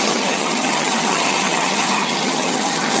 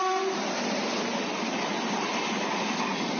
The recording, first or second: second